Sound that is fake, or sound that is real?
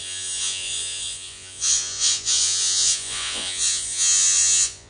fake